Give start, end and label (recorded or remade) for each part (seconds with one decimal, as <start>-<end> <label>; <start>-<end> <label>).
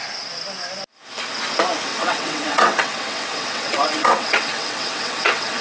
0.0-1.9 recorded; 1.9-5.6 remade